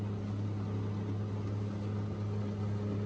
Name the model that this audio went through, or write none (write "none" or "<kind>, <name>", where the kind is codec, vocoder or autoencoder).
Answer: none